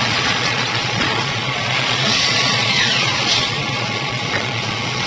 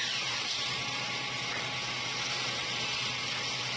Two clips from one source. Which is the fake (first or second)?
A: first